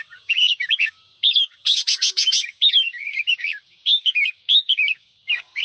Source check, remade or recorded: remade